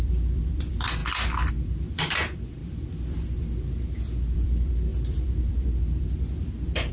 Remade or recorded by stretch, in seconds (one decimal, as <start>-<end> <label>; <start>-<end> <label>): 0.0-1.0 remade; 1.0-1.5 recorded; 1.5-6.9 remade